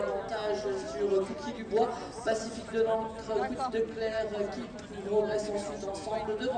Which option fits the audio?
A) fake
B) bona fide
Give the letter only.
B